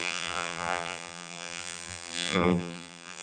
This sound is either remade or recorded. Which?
remade